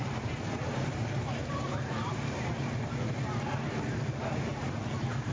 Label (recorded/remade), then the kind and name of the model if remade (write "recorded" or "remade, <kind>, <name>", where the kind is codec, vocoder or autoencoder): remade, vocoder, BigVGAN v2